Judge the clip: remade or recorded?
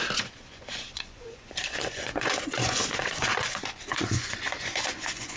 remade